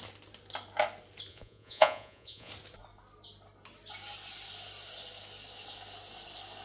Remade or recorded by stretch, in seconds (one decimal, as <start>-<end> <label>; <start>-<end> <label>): 0.0-1.3 recorded; 1.3-2.5 remade; 2.5-6.6 recorded